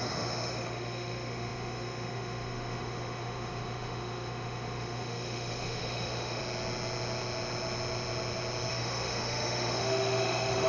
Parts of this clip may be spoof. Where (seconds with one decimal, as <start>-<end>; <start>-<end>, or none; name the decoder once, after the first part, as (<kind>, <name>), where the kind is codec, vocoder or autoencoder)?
0.0-6.4 (autoencoder, DAC-VAE); 8.7-10.7